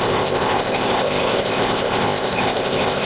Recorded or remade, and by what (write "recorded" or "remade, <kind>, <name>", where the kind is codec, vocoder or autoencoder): remade, codec, ZipCodec